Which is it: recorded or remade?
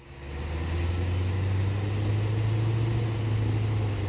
recorded